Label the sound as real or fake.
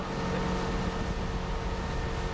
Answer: real